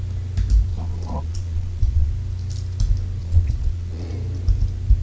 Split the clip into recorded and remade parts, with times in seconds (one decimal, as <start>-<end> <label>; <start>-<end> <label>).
0.0-0.7 recorded; 0.7-2.1 remade; 2.1-3.2 recorded; 3.2-4.1 remade; 4.1-5.0 recorded